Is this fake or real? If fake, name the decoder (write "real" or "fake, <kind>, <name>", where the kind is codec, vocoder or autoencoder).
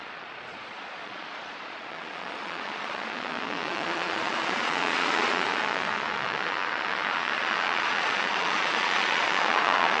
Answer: fake, vocoder, Vocos